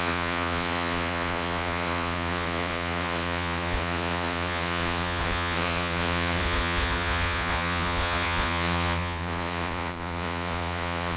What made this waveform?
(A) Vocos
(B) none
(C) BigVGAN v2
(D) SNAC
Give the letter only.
A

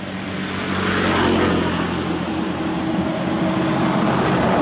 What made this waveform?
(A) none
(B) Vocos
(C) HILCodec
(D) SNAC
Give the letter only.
A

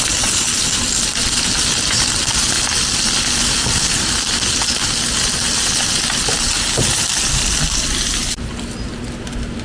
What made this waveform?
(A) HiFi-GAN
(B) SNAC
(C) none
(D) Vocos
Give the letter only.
C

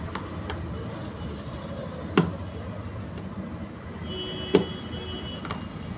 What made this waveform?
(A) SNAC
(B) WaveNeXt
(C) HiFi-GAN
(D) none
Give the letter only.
D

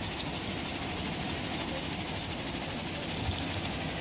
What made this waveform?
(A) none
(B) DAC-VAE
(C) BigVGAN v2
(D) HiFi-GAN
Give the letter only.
A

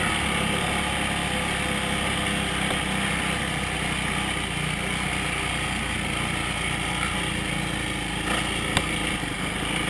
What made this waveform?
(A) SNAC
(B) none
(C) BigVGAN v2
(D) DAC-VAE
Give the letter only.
B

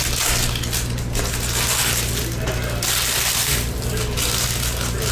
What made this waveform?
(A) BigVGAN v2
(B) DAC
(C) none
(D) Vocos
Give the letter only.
C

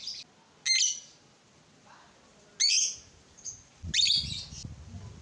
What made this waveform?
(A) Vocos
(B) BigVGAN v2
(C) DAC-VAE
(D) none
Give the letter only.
D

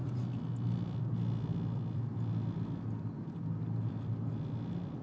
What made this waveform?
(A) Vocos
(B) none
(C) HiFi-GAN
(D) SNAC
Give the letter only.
B